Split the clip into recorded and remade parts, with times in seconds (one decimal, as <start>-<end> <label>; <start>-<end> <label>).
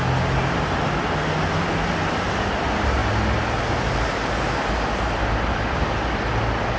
0.0-6.8 recorded